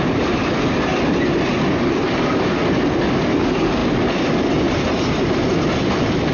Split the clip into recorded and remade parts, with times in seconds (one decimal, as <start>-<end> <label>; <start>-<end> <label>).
0.0-6.3 recorded